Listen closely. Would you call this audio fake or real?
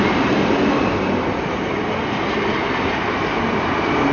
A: real